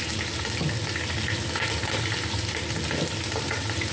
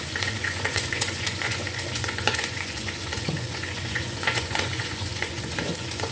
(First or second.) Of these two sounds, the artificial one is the second